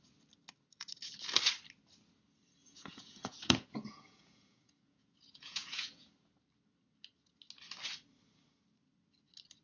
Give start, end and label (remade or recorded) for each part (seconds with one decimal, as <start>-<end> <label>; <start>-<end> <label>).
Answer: 0.0-2.6 recorded; 2.6-6.1 remade; 6.1-9.6 recorded